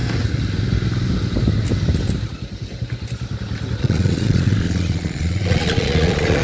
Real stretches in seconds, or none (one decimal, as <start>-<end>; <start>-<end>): 0.0-3.8